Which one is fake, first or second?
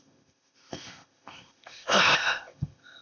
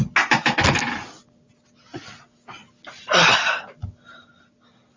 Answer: first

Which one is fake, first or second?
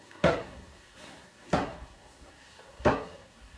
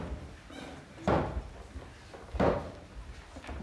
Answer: first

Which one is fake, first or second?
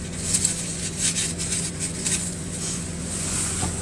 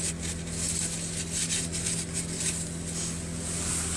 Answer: first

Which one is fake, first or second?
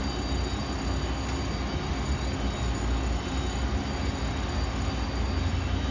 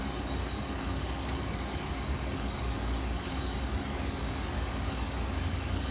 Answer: second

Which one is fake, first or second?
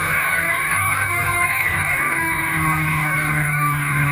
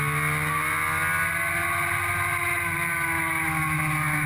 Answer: first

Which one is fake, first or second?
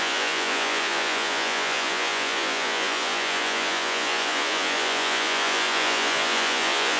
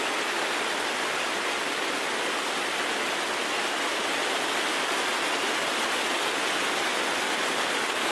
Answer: first